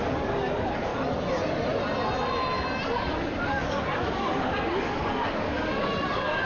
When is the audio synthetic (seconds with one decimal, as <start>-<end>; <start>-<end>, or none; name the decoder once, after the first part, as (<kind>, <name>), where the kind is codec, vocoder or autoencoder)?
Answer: 0.0-0.9 (codec, DAC); 3.3-6.5